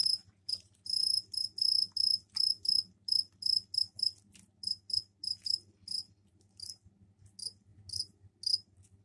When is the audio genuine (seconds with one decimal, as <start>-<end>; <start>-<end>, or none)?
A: 1.0-9.0